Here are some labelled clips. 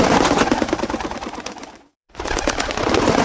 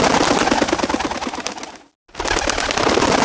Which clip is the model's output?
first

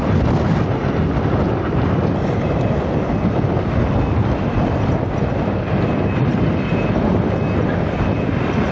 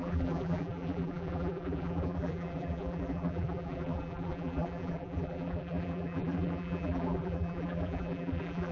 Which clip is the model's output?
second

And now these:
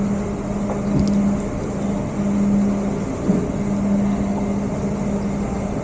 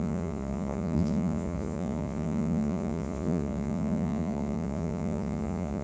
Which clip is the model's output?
second